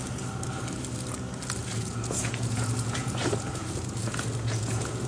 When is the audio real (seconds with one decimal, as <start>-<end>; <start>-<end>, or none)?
0.0-1.6